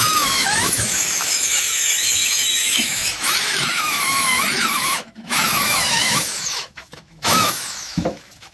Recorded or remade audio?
remade